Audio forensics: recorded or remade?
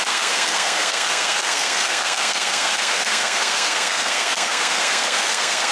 remade